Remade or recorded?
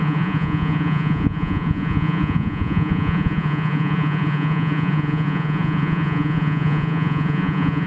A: remade